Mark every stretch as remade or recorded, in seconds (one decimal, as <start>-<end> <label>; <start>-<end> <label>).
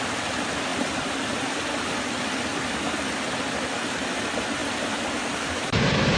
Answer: 0.0-6.2 recorded